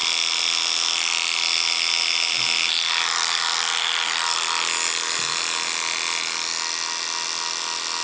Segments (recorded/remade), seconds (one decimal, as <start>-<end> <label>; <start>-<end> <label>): 0.0-8.0 recorded